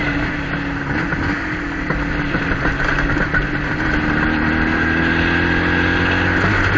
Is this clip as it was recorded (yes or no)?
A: yes